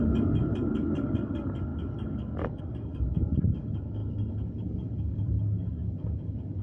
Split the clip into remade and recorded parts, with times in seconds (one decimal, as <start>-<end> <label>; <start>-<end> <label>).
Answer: 0.0-6.6 remade